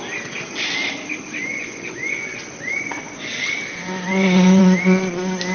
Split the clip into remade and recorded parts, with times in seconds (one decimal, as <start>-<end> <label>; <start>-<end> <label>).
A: 0.0-1.4 recorded; 1.4-3.3 remade; 3.3-4.1 recorded; 4.1-4.6 remade; 4.6-5.5 recorded

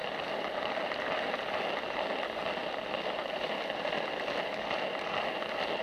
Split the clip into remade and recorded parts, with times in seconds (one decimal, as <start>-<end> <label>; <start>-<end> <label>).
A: 0.0-5.8 recorded

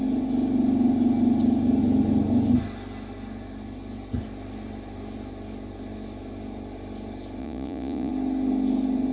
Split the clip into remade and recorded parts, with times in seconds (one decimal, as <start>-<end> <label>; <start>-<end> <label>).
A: 0.0-7.4 recorded; 7.4-8.1 remade; 8.1-9.1 recorded

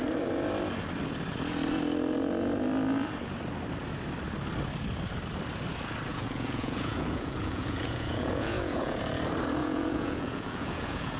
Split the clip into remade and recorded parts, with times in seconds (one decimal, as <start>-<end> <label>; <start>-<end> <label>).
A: 0.0-6.1 recorded; 6.1-9.0 remade; 9.0-9.6 recorded; 9.6-11.2 remade

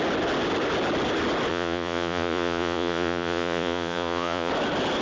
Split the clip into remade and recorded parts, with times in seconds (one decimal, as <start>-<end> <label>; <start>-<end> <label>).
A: 0.0-1.5 recorded; 1.5-4.5 remade; 4.5-5.0 recorded

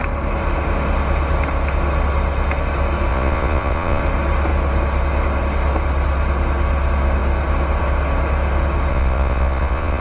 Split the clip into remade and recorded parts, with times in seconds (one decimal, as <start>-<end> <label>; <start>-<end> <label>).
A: 0.0-3.1 recorded; 3.1-4.0 remade; 4.0-8.9 recorded; 8.9-10.0 remade

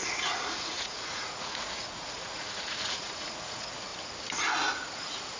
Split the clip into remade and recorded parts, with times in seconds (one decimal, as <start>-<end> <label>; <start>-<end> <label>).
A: 0.0-3.9 remade; 3.9-4.7 recorded; 4.7-5.4 remade